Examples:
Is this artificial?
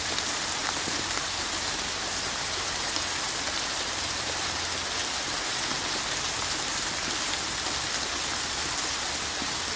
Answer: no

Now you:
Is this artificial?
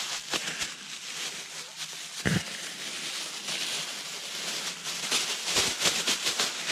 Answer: no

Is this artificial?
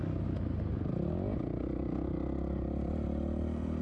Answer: no